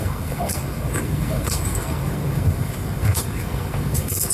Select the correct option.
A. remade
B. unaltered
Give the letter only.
A